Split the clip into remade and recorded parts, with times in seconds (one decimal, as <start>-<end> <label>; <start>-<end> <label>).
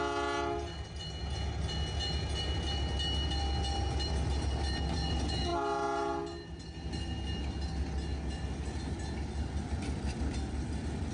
0.0-11.1 recorded